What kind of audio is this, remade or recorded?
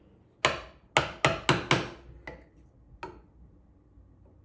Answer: recorded